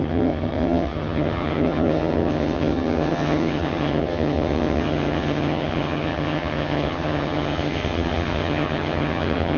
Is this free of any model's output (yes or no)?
no